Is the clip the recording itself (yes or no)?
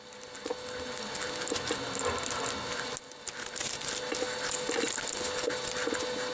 yes